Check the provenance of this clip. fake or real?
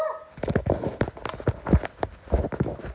real